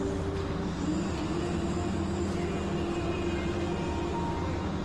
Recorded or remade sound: recorded